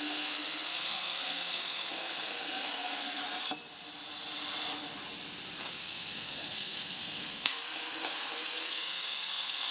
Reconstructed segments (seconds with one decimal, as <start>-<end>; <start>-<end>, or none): 0.0-3.2; 5.6-9.7